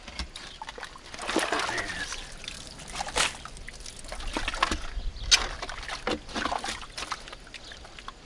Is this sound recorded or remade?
recorded